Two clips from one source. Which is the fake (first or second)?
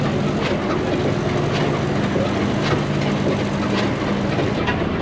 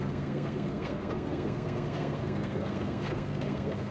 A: second